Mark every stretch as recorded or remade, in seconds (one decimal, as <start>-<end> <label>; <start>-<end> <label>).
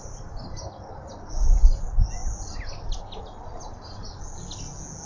0.0-5.1 recorded